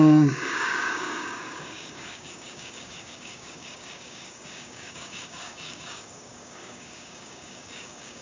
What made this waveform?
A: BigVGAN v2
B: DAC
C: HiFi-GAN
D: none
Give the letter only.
B